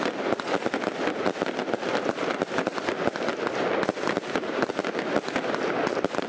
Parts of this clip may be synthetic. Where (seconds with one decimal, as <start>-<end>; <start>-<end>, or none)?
none